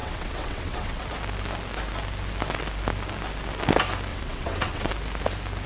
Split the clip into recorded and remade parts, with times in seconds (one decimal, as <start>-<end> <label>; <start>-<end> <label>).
0.0-1.0 remade; 1.0-4.1 recorded; 4.1-4.9 remade; 4.9-5.7 recorded